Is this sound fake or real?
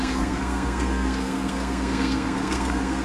fake